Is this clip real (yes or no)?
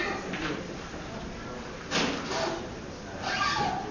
yes